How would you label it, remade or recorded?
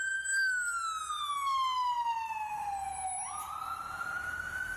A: recorded